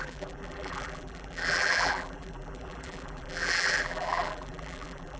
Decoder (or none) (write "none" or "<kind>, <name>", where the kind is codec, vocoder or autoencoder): vocoder, BigVGAN v2